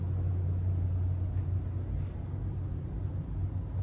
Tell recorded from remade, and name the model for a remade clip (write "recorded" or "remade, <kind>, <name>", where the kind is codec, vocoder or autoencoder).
recorded